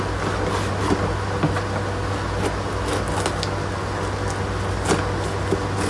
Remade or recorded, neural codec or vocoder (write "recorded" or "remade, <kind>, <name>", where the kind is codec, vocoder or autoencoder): recorded